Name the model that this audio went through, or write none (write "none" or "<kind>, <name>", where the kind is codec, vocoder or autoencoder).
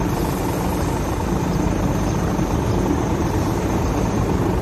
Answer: vocoder, BigVGAN v2